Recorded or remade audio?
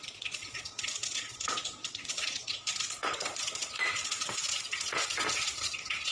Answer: remade